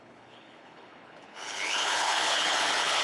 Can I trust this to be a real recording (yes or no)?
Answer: no